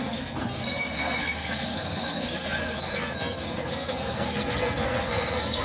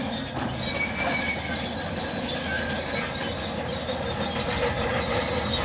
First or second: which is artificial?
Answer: first